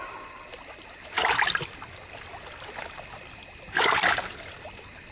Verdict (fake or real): fake